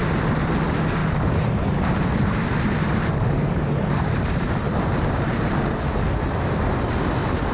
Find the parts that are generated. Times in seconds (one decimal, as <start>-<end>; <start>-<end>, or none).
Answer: 1.0-5.5